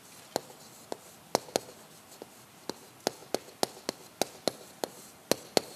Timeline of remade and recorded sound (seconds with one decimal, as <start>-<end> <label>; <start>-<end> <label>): 0.0-5.8 recorded